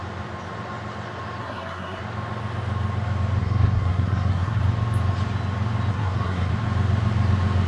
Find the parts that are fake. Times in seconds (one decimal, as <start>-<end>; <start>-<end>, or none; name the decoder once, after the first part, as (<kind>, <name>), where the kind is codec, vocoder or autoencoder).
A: 1.4-2.0 (codec, SNAC); 3.4-4.6; 5.9-6.5